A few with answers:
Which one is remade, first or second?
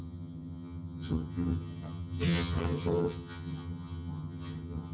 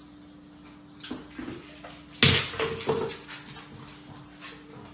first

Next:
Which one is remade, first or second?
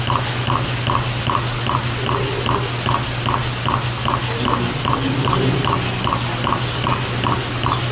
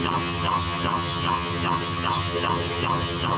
second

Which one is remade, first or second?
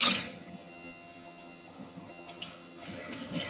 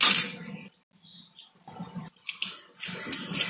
first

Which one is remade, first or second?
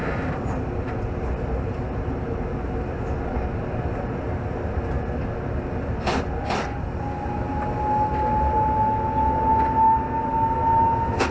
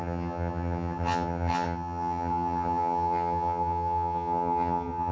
second